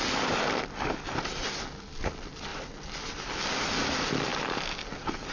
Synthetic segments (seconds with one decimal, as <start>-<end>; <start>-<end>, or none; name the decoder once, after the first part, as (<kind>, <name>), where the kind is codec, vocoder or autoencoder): 2.5-3.6 (vocoder, BigVGAN v2); 4.3-5.3